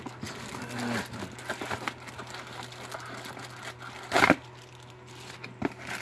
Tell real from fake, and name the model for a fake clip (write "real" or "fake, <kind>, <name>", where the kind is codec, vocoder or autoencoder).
real